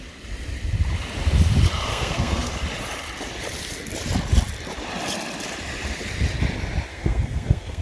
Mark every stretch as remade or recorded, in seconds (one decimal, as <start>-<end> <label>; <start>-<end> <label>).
0.0-1.9 recorded; 1.9-2.5 remade; 2.5-6.9 recorded; 6.9-7.8 remade